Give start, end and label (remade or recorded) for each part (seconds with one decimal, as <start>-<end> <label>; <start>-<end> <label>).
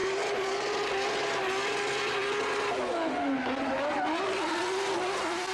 0.0-0.7 remade; 0.7-5.5 recorded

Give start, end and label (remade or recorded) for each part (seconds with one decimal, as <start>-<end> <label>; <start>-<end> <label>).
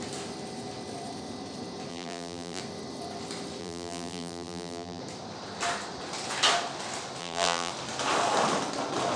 0.0-1.9 recorded; 1.9-2.6 remade; 2.6-3.6 recorded; 3.6-5.0 remade; 5.0-7.2 recorded; 7.2-7.7 remade; 7.7-9.2 recorded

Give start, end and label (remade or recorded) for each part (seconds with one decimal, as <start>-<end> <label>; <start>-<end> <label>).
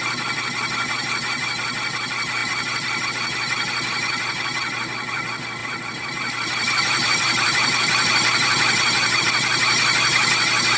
0.0-5.6 recorded; 5.6-9.2 remade; 9.2-10.8 recorded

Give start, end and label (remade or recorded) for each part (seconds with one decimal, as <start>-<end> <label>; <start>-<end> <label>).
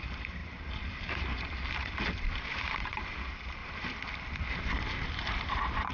0.0-3.6 remade; 3.6-4.5 recorded; 4.5-5.9 remade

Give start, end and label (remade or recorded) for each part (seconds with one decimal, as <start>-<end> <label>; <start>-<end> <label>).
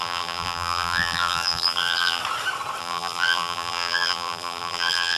0.0-2.2 remade; 2.2-2.8 recorded; 2.8-5.2 remade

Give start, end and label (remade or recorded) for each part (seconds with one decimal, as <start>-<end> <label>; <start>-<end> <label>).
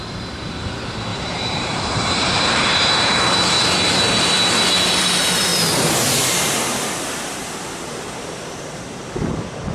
0.0-1.1 recorded; 1.1-3.2 remade; 3.2-5.5 recorded; 5.5-8.8 remade; 8.8-9.7 recorded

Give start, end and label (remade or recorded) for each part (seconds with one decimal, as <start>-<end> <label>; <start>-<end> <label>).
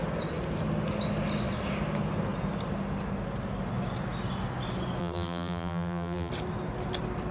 0.0-5.0 recorded; 5.0-6.3 remade; 6.3-7.3 recorded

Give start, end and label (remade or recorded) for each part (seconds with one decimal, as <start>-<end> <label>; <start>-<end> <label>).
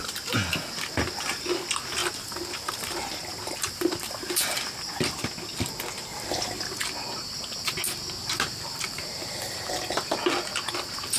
0.0-2.0 recorded; 2.0-4.7 remade; 4.7-6.1 recorded; 6.1-6.8 remade; 6.8-8.2 recorded; 8.2-9.7 remade; 9.7-11.2 recorded